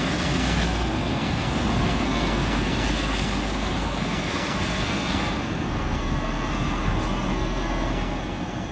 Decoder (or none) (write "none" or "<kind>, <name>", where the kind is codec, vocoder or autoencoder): codec, SNAC